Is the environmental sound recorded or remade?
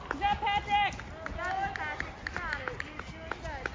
recorded